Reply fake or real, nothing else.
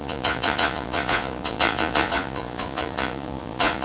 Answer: fake